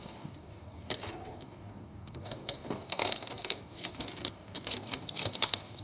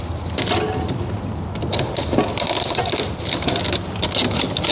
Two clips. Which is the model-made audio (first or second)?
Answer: first